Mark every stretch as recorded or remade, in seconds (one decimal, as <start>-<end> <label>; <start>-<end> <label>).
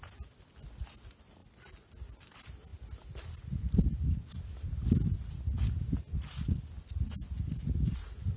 0.0-8.4 recorded